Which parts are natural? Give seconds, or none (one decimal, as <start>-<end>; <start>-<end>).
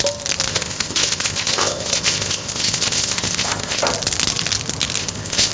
0.0-0.5; 3.8-5.0